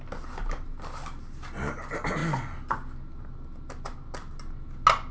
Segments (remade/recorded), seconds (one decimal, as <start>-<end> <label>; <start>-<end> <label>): 0.0-5.1 recorded